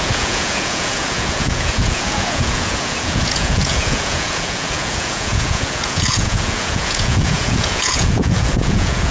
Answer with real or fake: fake